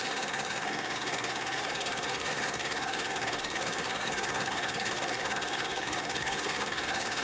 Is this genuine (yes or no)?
no